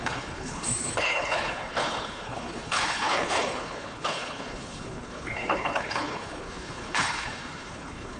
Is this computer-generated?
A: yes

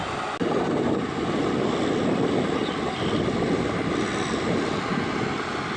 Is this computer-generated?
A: no